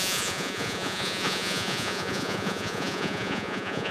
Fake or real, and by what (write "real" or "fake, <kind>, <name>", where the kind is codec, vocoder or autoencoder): fake, vocoder, Vocos